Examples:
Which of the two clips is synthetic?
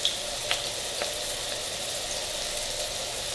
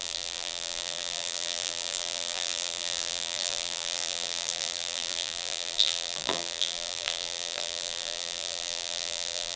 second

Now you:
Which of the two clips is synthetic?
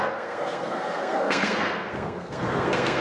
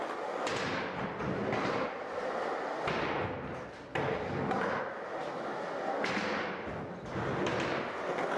first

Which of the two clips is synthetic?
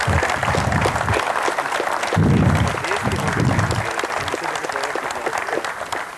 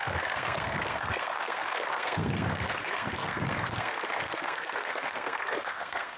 second